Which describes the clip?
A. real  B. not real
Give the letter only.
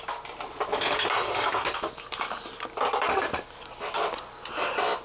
A